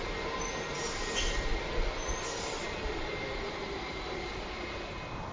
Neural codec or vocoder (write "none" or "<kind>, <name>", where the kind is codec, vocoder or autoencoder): none